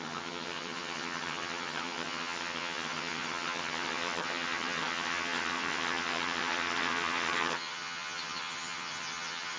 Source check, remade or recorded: remade